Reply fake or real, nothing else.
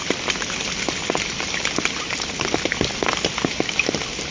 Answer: real